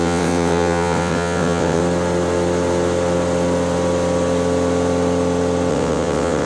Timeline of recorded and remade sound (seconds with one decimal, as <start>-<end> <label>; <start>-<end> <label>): 0.0-1.8 remade; 1.8-5.7 recorded; 5.7-6.5 remade